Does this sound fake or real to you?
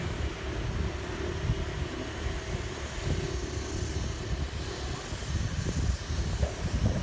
real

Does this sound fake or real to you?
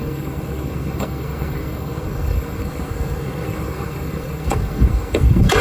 fake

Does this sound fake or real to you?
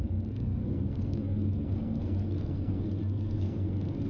fake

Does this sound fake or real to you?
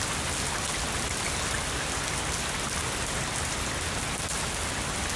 real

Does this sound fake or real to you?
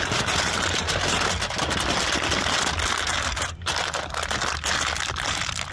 real